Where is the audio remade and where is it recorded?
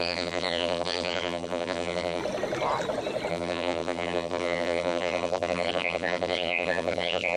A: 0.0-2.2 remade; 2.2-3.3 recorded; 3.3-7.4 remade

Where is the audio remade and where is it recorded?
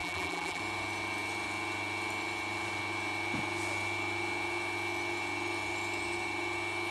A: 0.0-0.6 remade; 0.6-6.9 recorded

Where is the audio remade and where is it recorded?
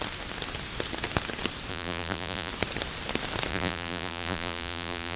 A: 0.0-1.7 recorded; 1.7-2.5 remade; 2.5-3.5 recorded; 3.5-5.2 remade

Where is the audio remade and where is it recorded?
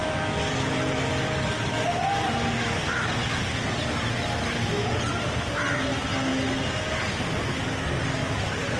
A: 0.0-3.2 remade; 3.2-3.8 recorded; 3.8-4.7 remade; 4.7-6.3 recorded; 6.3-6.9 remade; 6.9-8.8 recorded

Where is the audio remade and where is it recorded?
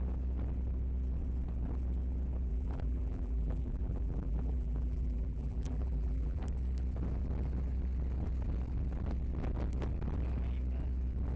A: 0.0-2.5 recorded; 2.5-6.4 remade; 6.4-11.4 recorded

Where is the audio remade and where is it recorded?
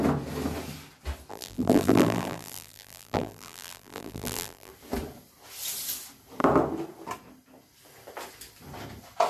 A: 0.0-1.3 recorded; 1.3-4.7 remade; 4.7-9.3 recorded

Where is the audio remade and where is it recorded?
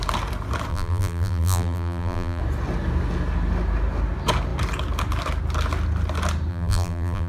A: 0.0-0.7 recorded; 0.7-2.4 remade; 2.4-6.5 recorded; 6.5-7.3 remade